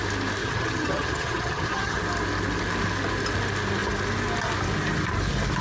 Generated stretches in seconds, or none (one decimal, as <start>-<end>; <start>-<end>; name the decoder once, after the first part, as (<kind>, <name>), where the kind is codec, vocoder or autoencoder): 0.4-2.0 (vocoder, HiFi-GAN)